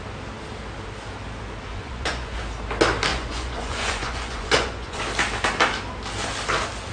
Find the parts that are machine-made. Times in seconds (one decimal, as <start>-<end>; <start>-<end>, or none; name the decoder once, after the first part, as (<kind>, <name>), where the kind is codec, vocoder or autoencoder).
1.7-2.4 (vocoder, Vocos); 3.1-5.0